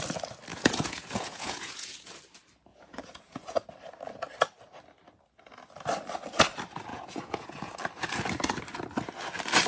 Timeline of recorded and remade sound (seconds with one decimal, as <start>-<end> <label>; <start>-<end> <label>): 0.0-0.5 recorded; 0.5-2.1 remade; 2.1-2.7 recorded; 2.7-3.7 remade; 3.7-6.9 recorded; 6.9-7.7 remade; 7.7-9.7 recorded